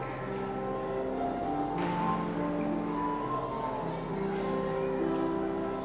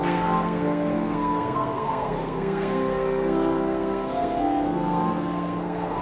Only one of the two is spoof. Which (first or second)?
second